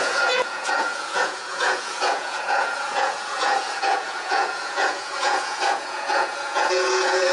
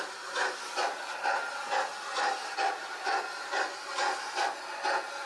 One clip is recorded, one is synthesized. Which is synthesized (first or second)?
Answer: first